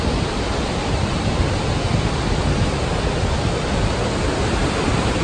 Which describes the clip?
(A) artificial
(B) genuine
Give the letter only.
B